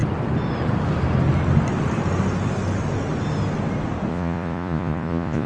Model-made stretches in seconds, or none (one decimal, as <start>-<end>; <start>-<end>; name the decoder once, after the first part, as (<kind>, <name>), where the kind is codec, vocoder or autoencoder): 4.1-5.5 (vocoder, Vocos)